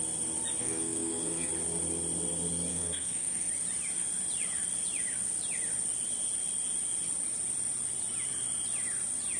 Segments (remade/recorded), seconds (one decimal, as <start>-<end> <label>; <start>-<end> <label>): 0.0-0.6 recorded; 0.6-1.5 remade; 1.5-2.7 recorded; 2.7-3.5 remade; 3.5-9.4 recorded